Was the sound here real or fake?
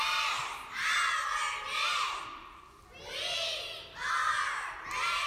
real